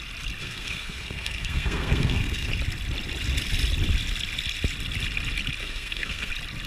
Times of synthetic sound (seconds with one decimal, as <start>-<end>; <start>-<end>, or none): 0.4-2.5; 5.6-6.3